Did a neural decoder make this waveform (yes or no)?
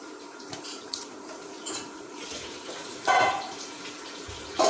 yes